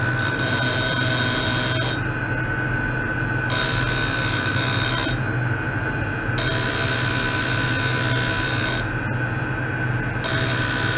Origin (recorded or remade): recorded